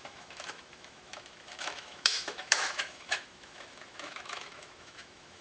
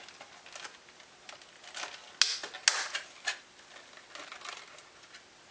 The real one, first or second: second